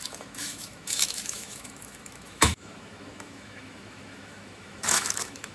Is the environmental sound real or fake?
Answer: fake